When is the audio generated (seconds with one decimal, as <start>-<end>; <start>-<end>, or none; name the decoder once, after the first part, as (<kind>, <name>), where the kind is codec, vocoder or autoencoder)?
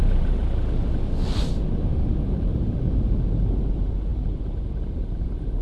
0.0-0.4 (vocoder, BigVGAN v2); 1.7-2.5; 3.6-5.6